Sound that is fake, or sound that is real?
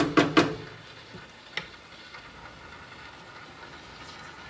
real